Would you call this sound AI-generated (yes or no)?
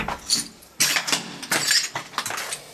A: no